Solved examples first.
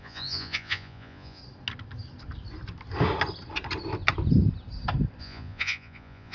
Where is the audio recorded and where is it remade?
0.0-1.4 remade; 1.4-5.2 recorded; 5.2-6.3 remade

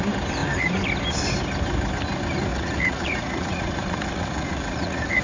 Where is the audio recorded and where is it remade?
0.0-2.5 recorded; 2.5-5.2 remade

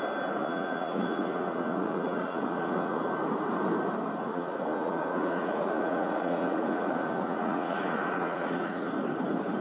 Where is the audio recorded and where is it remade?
0.0-0.4 recorded; 0.4-3.0 remade; 3.0-4.2 recorded; 4.2-8.9 remade; 8.9-9.6 recorded